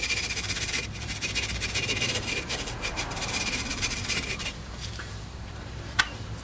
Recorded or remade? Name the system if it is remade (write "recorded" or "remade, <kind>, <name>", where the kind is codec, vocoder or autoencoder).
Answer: remade, vocoder, BigVGAN v2